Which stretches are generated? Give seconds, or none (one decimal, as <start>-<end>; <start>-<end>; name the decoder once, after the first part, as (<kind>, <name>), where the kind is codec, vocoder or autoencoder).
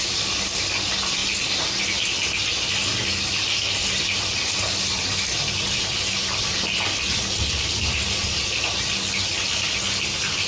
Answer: none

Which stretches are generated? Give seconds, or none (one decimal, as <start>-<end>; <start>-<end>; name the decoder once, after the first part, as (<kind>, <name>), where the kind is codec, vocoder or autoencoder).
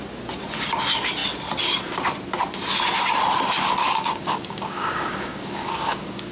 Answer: 3.8-6.3 (codec, DAC)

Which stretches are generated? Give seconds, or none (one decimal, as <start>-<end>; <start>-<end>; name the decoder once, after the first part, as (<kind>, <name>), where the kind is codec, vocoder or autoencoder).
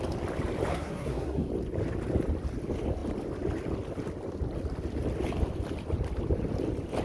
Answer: 0.7-1.5 (codec, SNAC)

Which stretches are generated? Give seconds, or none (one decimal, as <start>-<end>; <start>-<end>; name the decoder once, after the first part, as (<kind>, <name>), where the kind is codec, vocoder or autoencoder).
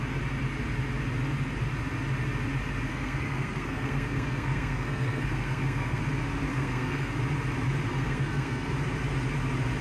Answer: 2.9-6.0 (codec, SNAC); 6.5-7.1; 7.9-8.7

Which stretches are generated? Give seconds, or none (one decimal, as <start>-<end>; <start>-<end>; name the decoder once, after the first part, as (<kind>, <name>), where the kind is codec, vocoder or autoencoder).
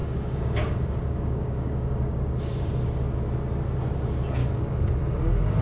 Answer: 0.0-2.7 (codec, DAC); 4.4-5.6